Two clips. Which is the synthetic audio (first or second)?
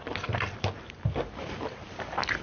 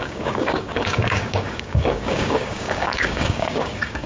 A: second